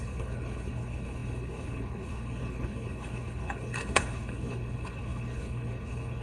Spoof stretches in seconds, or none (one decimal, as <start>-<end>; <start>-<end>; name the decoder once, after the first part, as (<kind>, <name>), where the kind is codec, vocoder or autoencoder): 0.0-6.2 (codec, HILCodec)